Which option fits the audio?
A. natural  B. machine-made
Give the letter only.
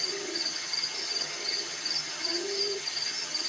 B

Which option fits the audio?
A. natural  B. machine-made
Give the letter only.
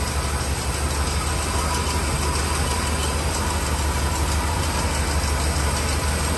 A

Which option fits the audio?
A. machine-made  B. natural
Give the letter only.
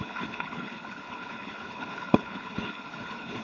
A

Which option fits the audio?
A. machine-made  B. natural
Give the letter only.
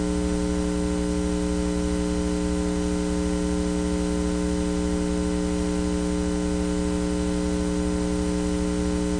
B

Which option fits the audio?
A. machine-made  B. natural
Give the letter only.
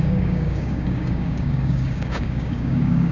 A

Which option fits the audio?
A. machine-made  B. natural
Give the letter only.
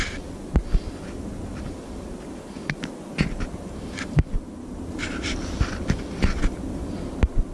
B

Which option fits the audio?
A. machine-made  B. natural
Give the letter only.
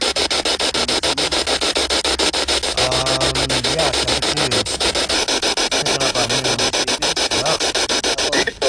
B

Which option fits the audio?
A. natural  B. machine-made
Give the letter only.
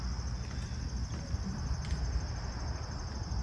A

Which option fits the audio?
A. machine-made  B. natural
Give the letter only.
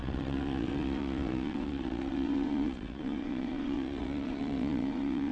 A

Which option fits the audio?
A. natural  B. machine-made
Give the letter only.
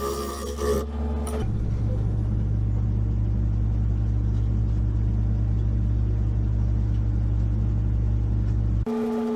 A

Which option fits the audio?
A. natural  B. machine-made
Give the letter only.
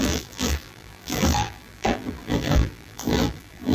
B